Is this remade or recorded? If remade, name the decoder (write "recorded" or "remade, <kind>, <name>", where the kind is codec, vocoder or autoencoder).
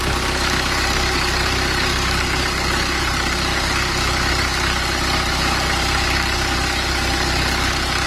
remade, codec, DAC